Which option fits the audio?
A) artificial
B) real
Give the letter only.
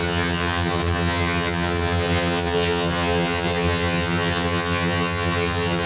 A